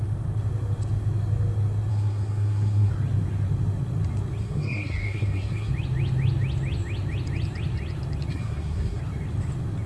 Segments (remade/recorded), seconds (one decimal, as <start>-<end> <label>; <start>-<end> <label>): 0.0-1.9 recorded; 1.9-2.9 remade; 2.9-4.4 recorded; 4.4-5.7 remade; 5.7-8.3 recorded; 8.3-9.0 remade; 9.0-9.9 recorded